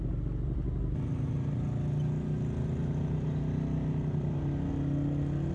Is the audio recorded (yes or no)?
yes